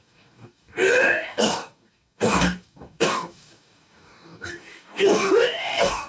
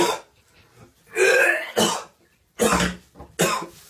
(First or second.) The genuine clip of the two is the second